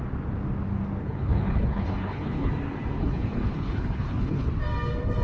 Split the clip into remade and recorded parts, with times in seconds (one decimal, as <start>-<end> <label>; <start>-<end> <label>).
0.0-1.0 recorded; 1.0-2.5 remade; 2.5-3.0 recorded; 3.0-4.5 remade; 4.5-5.2 recorded